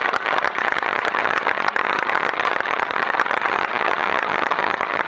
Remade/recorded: remade